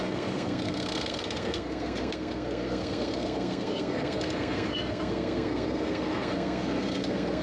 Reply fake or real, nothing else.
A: fake